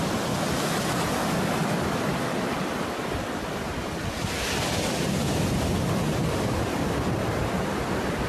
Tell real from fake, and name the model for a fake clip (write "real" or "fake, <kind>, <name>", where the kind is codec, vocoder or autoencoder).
real